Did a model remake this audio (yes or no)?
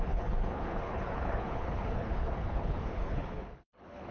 yes